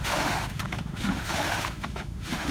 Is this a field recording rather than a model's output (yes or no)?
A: no